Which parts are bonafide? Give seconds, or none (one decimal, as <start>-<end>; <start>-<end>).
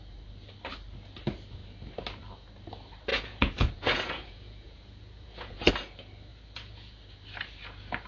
0.0-3.1; 5.7-6.3; 7.0-8.1